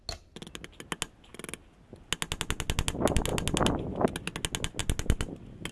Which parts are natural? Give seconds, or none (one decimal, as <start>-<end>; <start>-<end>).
0.0-5.7